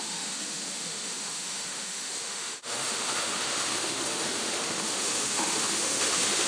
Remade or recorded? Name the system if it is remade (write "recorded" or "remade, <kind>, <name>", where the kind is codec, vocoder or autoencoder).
remade, autoencoder, DAC-VAE